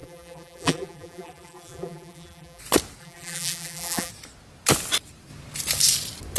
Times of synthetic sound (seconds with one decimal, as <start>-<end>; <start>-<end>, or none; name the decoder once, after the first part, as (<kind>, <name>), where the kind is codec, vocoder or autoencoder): 0.0-2.6 (vocoder, BigVGAN v2); 3.0-4.1